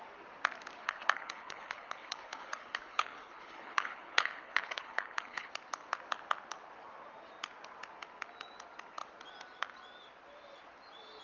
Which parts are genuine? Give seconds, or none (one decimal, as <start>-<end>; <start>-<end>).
0.0-0.8; 5.5-11.2